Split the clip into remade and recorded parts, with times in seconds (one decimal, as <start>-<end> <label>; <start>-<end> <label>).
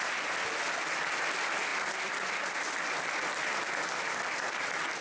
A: 0.0-5.0 recorded